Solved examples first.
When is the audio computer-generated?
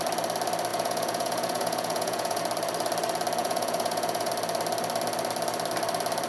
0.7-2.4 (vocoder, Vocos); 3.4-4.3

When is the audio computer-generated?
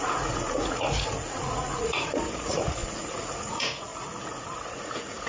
0.0-5.3 (vocoder, Vocos)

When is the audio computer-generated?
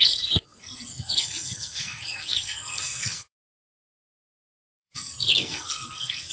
0.0-6.3 (codec, SNAC)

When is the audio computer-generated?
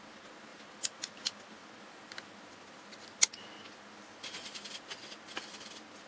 none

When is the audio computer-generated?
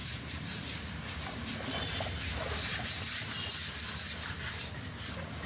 0.0-0.6 (vocoder, BigVGAN v2); 2.4-3.5